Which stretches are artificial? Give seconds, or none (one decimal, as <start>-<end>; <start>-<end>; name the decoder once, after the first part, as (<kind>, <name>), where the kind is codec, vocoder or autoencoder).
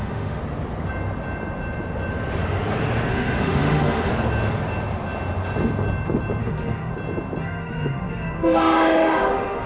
0.0-0.4 (autoencoder, DAC-VAE); 3.1-4.1; 6.4-6.9; 7.4-9.7